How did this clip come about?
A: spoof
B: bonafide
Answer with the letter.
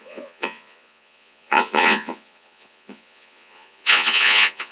A